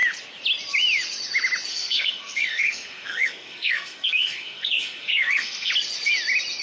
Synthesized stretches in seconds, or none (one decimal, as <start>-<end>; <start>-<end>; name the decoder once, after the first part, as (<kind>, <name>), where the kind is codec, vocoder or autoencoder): 1.7-5.7 (codec, SNAC)